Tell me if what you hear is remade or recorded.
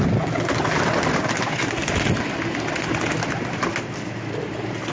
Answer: recorded